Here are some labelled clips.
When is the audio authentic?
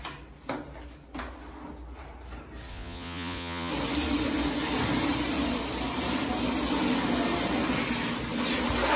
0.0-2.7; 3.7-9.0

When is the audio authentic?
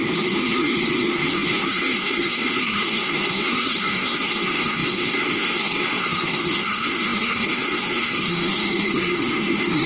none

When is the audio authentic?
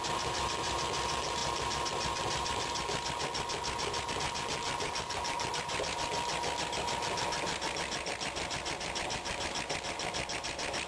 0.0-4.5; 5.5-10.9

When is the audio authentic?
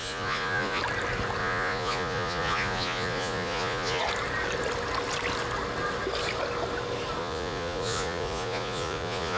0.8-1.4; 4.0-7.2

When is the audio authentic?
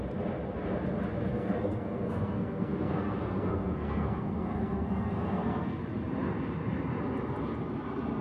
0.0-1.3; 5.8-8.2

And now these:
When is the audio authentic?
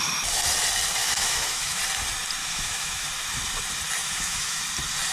0.0-1.0; 1.8-2.4; 3.1-4.0; 4.6-5.1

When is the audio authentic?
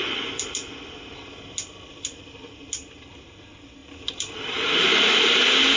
0.0-5.8